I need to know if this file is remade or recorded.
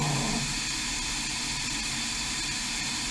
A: remade